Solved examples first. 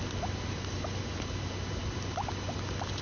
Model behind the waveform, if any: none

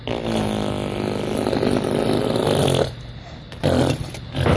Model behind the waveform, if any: none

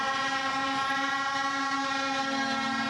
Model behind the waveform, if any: none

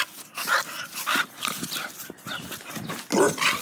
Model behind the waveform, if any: none